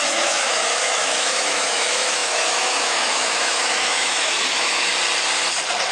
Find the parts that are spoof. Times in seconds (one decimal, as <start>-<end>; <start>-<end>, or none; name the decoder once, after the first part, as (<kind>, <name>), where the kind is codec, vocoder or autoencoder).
0.0-4.9 (autoencoder, DAC-VAE)